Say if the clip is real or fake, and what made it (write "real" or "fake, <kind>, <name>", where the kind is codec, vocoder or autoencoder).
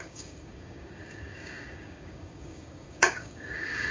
fake, codec, DAC